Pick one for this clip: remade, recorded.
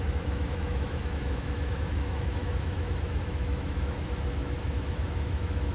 remade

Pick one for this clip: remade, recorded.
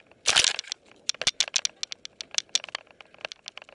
recorded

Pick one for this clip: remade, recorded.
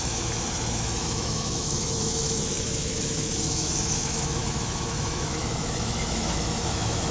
remade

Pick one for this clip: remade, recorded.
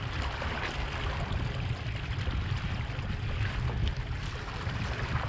recorded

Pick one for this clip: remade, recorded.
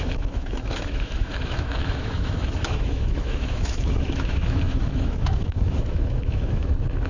remade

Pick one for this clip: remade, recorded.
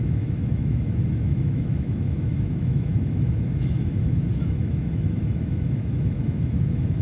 remade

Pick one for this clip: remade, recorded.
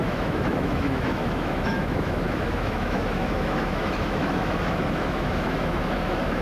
remade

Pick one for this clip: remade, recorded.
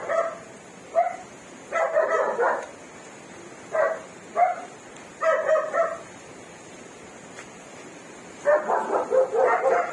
recorded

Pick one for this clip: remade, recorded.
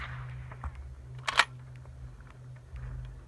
recorded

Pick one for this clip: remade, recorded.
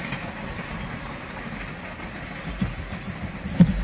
recorded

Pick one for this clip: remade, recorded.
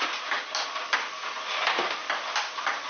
recorded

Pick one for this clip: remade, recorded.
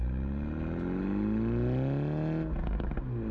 recorded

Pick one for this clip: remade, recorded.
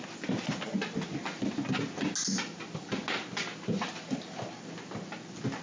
recorded